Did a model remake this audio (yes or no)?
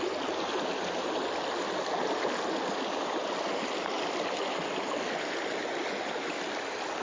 no